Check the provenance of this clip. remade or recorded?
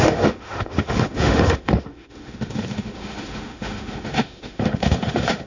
remade